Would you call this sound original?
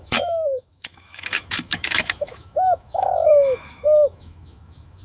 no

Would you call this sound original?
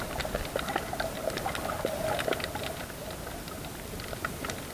yes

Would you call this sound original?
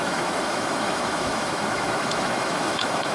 no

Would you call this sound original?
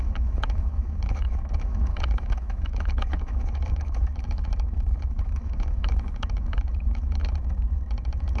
no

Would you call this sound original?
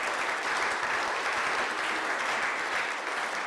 yes